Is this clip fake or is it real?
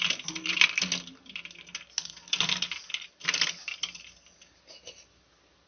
real